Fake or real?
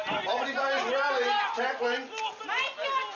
real